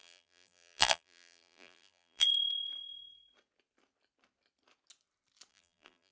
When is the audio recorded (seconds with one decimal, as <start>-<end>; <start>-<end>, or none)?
2.3-5.5